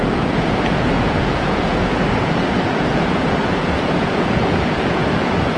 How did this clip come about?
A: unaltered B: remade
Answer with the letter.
B